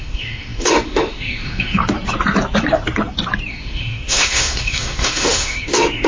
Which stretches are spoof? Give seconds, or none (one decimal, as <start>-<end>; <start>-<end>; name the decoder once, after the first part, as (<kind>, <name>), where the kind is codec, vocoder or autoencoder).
0.0-1.8 (autoencoder, DAC-VAE); 3.5-6.1